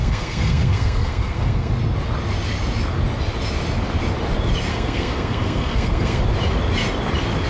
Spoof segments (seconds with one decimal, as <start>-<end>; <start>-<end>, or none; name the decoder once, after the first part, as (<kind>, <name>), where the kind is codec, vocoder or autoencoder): 0.0-1.7 (codec, SNAC); 4.7-6.2